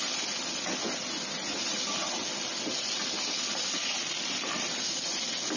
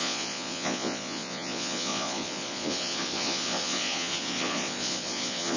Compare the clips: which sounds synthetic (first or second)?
second